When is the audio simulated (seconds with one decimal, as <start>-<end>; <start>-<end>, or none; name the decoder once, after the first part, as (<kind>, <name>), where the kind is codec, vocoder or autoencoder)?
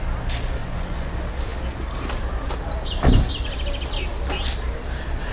0.6-1.1 (vocoder, Vocos)